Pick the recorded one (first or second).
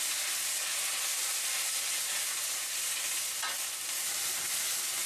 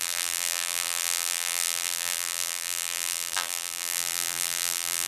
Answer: first